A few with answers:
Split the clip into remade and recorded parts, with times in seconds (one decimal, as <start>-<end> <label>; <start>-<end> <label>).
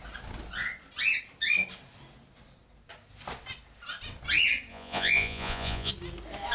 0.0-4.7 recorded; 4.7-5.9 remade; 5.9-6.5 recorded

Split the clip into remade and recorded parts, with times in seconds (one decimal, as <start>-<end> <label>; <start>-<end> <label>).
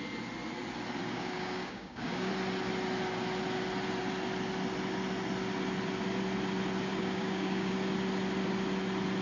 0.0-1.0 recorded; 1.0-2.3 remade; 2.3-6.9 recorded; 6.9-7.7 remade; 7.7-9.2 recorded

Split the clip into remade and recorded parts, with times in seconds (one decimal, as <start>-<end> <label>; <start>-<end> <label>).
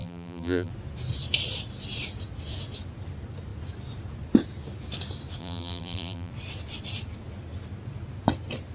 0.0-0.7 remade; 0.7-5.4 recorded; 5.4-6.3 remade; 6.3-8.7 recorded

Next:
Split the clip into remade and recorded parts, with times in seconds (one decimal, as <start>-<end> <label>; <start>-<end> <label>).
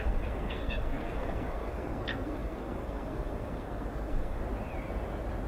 0.0-4.4 remade; 4.4-5.5 recorded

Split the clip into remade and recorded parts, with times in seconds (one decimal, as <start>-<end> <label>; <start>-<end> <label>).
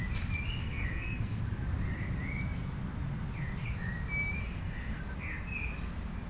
0.0-0.6 recorded; 0.6-1.4 remade; 1.4-4.4 recorded; 4.4-5.0 remade; 5.0-6.3 recorded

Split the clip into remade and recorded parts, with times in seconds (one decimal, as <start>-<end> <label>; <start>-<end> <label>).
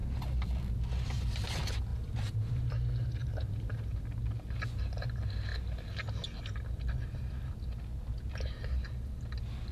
0.0-1.9 recorded; 1.9-2.7 remade; 2.7-3.2 recorded; 3.2-4.2 remade; 4.2-9.7 recorded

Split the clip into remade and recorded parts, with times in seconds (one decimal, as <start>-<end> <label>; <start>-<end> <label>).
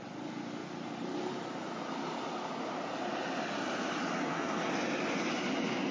0.0-4.2 recorded; 4.2-4.7 remade; 4.7-5.9 recorded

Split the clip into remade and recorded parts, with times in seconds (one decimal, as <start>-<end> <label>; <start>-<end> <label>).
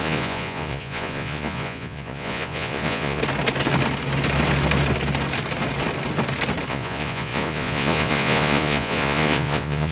0.0-3.2 remade; 3.2-6.7 recorded; 6.7-9.9 remade